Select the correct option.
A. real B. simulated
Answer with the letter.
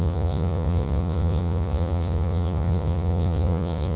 B